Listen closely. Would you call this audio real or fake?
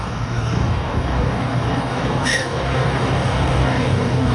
fake